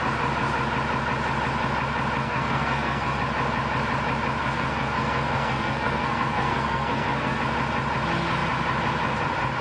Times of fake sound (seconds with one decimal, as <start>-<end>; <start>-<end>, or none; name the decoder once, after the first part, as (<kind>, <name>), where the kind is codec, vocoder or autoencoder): 2.2-3.2 (codec, SNAC); 4.4-7.4